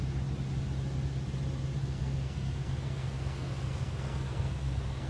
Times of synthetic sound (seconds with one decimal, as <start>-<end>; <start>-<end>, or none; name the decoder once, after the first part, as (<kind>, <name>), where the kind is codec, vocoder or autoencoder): 1.8-5.1 (codec, SNAC)